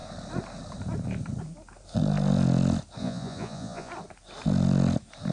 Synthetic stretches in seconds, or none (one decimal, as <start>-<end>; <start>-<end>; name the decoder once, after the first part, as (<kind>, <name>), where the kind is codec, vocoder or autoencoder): 3.0-3.9 (vocoder, Vocos)